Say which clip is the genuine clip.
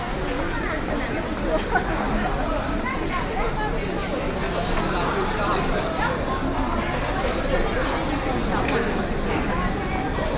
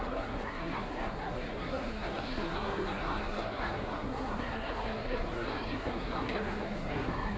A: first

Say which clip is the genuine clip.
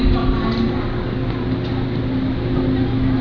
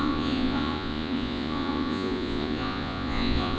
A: first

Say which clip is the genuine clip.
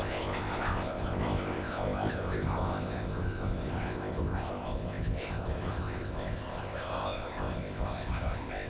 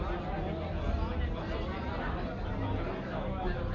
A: second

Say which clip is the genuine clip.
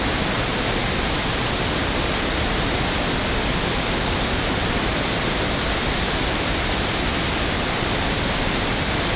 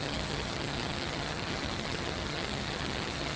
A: first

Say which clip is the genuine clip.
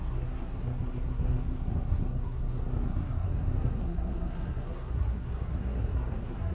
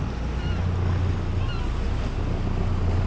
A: second